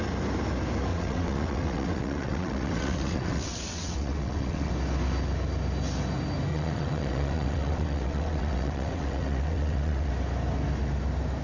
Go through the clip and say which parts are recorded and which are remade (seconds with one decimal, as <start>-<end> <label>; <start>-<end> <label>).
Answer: 0.0-0.9 recorded; 0.9-4.7 remade; 4.7-6.5 recorded; 6.5-10.1 remade; 10.1-11.4 recorded